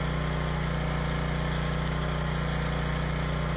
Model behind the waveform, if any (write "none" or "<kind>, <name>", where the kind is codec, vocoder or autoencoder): none